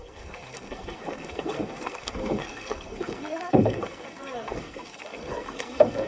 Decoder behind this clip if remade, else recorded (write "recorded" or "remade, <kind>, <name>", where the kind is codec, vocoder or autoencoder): remade, codec, SNAC